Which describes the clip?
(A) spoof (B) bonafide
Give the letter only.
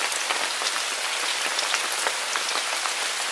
B